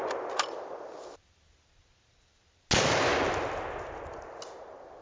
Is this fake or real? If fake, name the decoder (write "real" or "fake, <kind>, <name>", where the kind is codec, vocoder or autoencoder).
real